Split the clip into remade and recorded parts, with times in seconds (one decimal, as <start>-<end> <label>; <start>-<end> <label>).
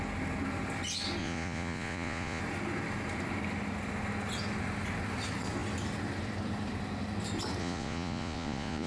0.0-1.2 recorded; 1.2-2.4 remade; 2.4-7.6 recorded; 7.6-8.9 remade